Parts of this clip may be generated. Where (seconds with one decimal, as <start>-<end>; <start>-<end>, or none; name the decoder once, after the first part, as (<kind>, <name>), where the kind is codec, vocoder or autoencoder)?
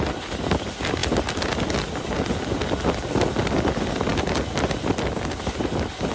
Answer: none